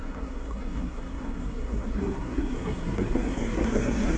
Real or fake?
fake